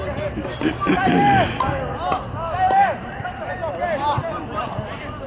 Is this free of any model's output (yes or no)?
yes